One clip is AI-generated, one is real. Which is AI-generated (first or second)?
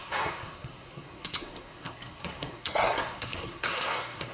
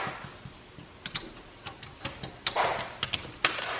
first